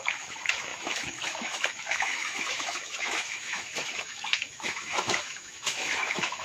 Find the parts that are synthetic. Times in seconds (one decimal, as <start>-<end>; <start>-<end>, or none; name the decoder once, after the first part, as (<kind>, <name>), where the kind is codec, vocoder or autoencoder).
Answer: 0.0-6.4 (autoencoder, DAC-VAE)